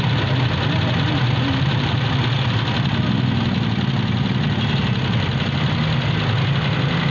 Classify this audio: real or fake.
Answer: real